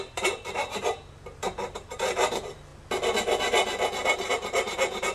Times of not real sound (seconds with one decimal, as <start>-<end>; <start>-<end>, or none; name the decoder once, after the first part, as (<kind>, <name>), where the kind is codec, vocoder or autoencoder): 0.0-2.7 (vocoder, BigVGAN v2); 4.3-5.1